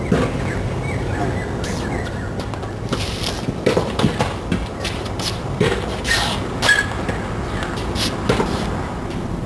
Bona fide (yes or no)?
yes